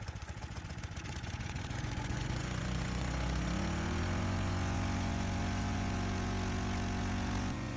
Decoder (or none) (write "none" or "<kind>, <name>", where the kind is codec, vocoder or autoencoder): vocoder, Vocos